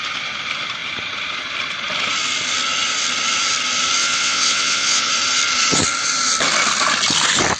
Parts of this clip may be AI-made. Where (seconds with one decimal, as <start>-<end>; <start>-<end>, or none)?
4.0-5.1